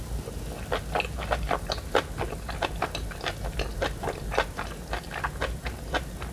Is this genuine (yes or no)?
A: yes